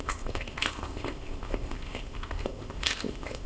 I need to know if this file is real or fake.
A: fake